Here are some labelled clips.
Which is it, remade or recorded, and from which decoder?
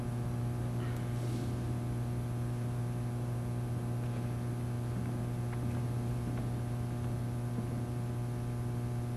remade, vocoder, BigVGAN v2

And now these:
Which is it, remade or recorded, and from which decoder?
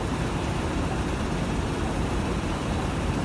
remade, vocoder, BigVGAN v2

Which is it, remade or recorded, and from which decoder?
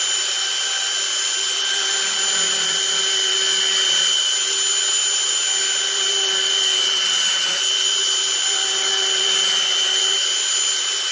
remade, vocoder, BigVGAN v2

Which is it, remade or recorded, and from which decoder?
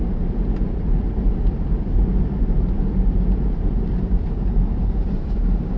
remade, vocoder, BigVGAN v2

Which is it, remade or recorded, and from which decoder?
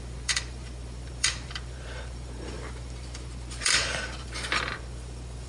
remade, vocoder, BigVGAN v2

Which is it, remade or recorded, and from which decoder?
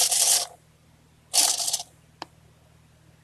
recorded